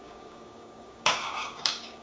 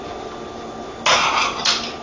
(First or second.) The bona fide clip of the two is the second